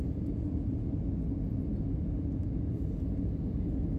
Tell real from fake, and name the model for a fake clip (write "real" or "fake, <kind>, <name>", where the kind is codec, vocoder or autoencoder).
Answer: real